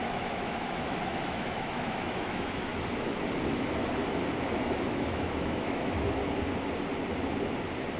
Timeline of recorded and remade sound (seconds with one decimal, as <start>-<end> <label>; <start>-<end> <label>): 0.0-2.7 remade; 2.7-4.6 recorded; 4.6-6.2 remade; 6.2-8.0 recorded